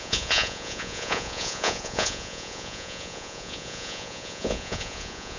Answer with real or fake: fake